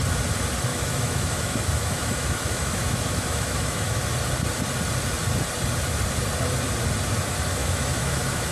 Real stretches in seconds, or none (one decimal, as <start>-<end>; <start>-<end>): 0.0-0.7; 4.0-7.6